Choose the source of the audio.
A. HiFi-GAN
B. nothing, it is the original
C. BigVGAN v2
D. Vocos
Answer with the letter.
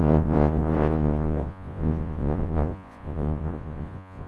D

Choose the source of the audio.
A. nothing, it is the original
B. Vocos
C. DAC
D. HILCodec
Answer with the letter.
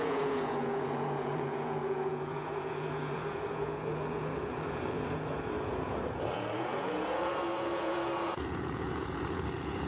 B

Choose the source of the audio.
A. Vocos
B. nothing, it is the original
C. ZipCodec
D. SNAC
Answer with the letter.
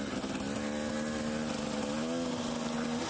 B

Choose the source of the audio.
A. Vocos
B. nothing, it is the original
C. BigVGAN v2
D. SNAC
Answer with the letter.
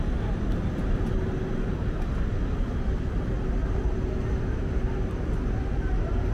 B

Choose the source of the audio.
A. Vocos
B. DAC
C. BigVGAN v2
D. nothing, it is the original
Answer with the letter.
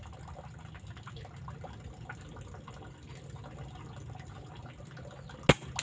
D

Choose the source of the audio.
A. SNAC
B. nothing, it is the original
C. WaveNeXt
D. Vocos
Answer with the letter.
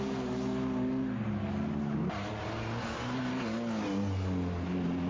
B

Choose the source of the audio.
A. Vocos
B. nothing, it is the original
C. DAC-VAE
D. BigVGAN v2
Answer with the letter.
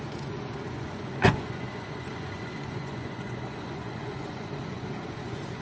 A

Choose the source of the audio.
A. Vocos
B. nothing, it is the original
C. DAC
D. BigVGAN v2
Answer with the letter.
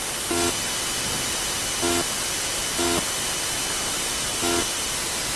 B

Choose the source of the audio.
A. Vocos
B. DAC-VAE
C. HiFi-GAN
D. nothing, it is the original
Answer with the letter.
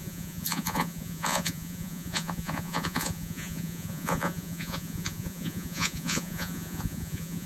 A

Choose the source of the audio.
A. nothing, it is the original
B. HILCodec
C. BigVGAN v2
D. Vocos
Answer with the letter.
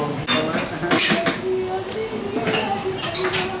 A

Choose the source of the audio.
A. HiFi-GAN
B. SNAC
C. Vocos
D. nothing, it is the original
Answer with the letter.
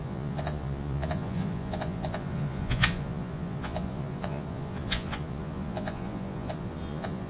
C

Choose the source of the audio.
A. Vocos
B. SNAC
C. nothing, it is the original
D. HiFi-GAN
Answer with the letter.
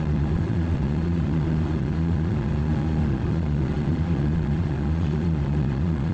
A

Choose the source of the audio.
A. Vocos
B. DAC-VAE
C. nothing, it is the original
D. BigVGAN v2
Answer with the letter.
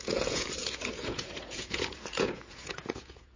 A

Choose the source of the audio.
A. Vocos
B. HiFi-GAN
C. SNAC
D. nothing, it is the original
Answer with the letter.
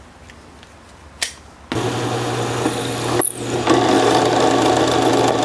D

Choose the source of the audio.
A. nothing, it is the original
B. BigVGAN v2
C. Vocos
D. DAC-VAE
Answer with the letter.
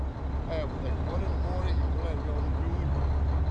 A